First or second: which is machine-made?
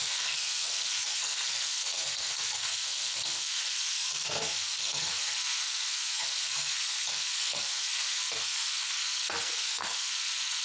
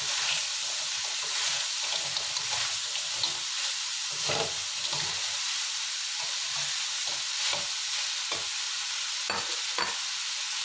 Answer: first